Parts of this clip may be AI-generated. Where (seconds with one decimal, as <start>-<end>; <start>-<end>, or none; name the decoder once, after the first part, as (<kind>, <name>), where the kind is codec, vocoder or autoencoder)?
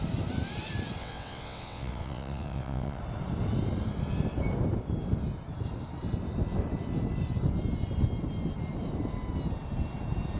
1.0-3.0 (vocoder, WaveNeXt)